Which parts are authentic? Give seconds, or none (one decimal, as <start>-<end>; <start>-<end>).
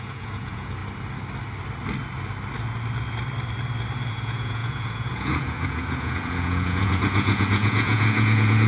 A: 0.8-4.1